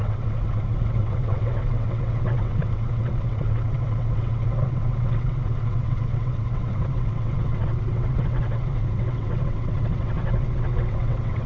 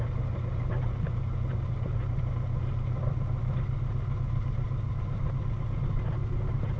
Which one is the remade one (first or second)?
first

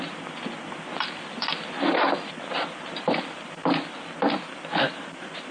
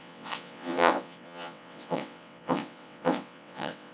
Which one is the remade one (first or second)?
second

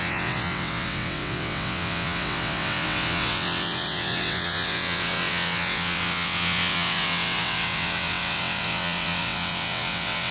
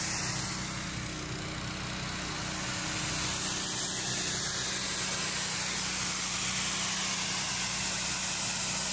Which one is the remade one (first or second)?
first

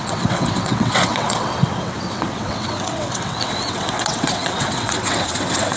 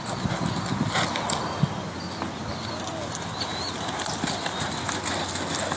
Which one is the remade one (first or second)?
first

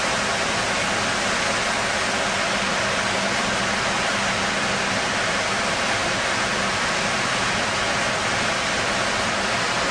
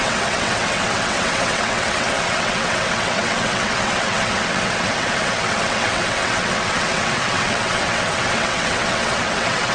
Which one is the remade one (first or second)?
second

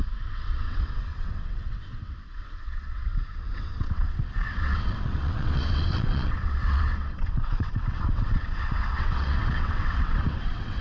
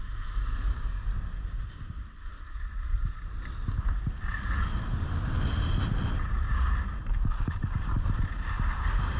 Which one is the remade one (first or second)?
first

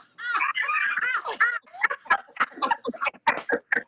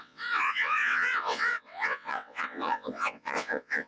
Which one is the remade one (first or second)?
second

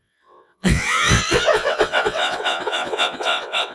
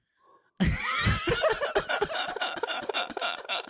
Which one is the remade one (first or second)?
first